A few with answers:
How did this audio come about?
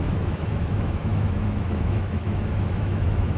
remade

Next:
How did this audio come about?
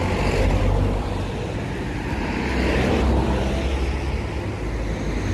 recorded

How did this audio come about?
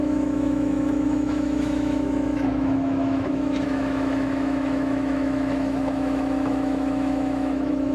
remade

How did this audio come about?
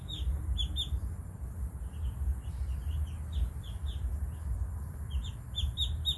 recorded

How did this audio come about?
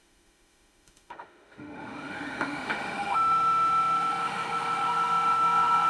remade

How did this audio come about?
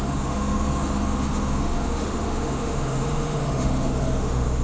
remade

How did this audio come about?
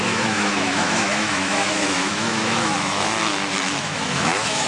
remade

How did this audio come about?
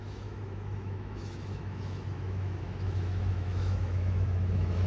remade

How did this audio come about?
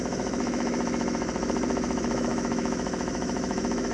remade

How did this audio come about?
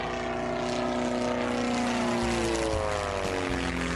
recorded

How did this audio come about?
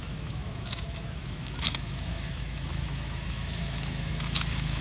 remade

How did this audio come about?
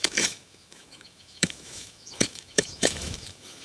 remade